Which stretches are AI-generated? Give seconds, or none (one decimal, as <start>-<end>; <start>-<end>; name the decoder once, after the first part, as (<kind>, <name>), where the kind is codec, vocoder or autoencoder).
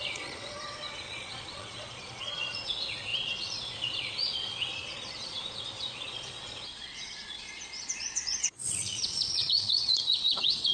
0.0-10.7 (vocoder, Vocos)